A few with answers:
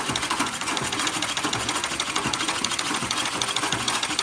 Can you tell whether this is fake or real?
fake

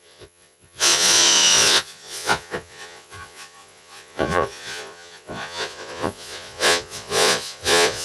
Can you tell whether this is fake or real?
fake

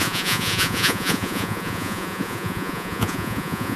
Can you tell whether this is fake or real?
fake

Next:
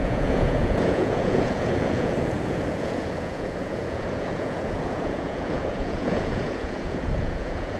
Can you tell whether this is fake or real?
fake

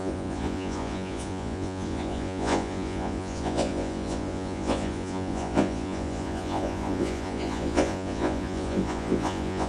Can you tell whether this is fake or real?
fake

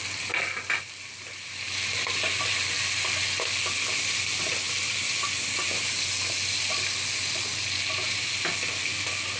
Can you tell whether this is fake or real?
real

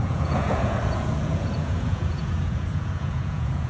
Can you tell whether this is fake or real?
fake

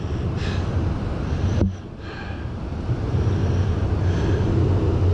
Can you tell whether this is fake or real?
real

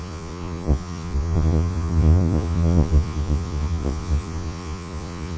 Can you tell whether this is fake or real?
fake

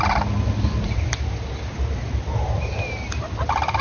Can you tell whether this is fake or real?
real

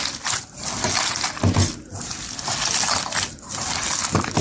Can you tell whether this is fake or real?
real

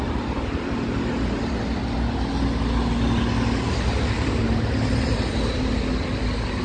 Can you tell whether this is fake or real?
real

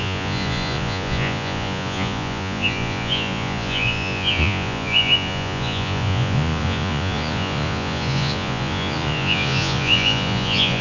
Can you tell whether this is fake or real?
fake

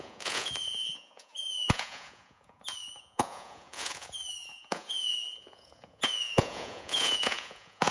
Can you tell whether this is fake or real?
fake